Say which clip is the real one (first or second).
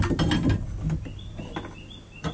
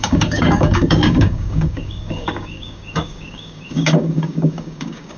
first